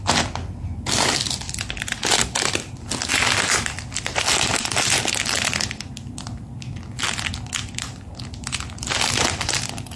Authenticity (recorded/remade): recorded